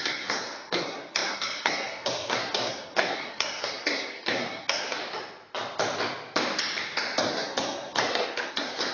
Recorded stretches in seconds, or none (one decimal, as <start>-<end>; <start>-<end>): 5.0-7.3